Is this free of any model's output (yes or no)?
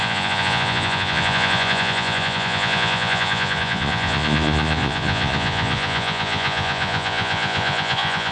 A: no